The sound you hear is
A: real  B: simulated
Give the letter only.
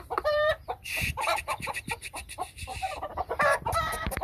B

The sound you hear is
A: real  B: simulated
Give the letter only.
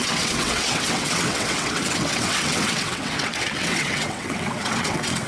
B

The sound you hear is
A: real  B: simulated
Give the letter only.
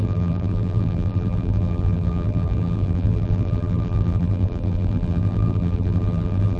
B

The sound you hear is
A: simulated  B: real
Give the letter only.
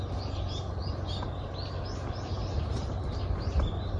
B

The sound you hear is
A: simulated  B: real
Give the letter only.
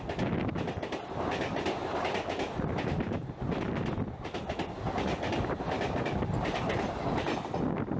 B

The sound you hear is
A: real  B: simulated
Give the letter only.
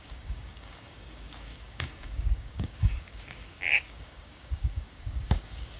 B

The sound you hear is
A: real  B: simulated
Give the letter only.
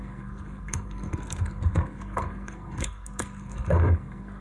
B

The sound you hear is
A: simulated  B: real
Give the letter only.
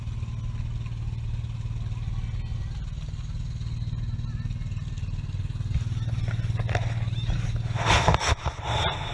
B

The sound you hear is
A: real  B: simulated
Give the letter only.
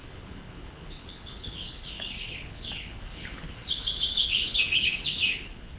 B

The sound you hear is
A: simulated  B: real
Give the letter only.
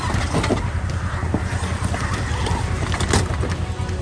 B